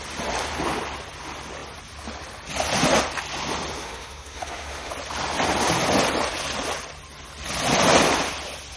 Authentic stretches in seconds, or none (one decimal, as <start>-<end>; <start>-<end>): 0.0-3.8; 4.9-8.8